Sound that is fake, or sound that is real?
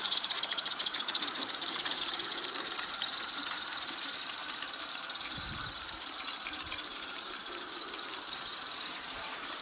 fake